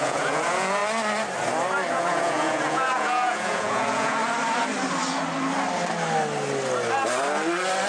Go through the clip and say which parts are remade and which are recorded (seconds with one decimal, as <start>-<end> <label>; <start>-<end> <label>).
0.0-0.8 remade; 0.8-1.9 recorded; 1.9-4.2 remade; 4.2-7.9 recorded